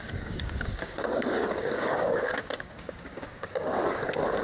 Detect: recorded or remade remade